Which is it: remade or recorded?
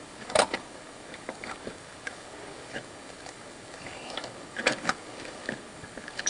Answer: remade